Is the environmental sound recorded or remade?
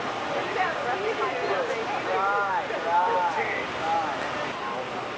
recorded